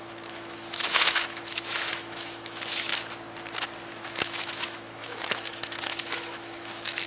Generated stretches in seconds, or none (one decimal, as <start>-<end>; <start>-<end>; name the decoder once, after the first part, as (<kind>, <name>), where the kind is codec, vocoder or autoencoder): 0.0-2.9 (autoencoder, DAC-VAE); 3.9-7.1